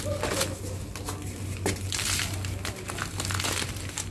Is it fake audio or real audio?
real